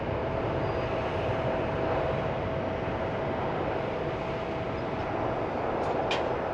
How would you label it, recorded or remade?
recorded